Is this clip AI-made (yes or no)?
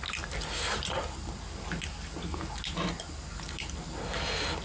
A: no